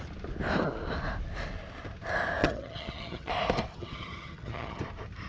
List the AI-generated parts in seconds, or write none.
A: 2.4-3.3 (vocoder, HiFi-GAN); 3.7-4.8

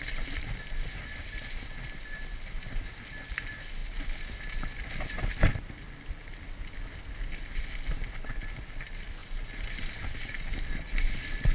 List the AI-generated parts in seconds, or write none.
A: none

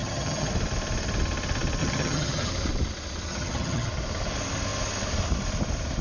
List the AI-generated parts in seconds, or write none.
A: 0.0-0.5 (vocoder, HiFi-GAN); 1.8-2.5; 3.3-3.9

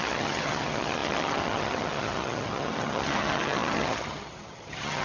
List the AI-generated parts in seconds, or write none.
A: 0.0-5.0 (vocoder, HiFi-GAN)

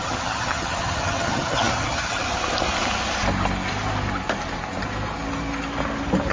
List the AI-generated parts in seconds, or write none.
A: 0.0-2.2 (vocoder, HiFi-GAN)

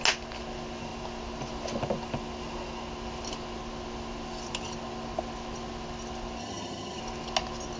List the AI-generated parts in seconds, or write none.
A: 6.4-7.0 (vocoder, HiFi-GAN)

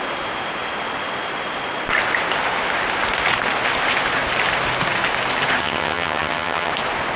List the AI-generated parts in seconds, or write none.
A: 5.6-6.7 (vocoder, HiFi-GAN)